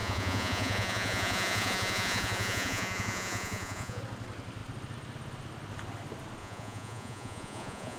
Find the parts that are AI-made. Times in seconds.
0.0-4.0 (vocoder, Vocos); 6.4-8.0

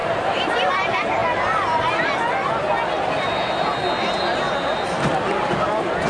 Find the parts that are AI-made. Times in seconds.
none

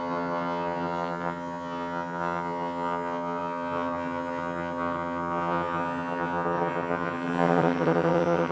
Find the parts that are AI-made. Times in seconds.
0.0-8.5 (vocoder, HiFi-GAN)

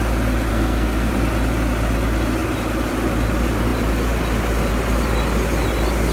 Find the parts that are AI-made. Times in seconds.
0.5-1.1 (codec, SNAC)

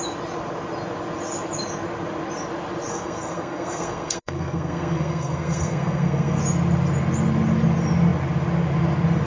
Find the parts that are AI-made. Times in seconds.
2.9-6.4 (codec, SNAC)

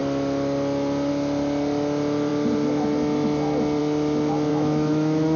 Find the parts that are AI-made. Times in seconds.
4.5-5.4 (autoencoder, DAC-VAE)

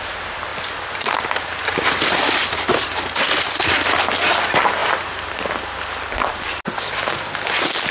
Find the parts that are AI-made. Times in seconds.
none

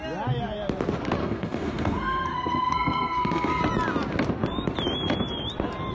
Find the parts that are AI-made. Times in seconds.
1.2-3.6 (codec, SNAC)